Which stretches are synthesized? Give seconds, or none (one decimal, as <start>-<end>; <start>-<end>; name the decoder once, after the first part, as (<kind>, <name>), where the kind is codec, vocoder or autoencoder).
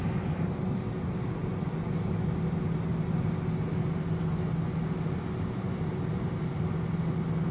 0.0-0.6 (vocoder, BigVGAN v2)